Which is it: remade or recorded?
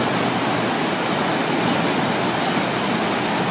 recorded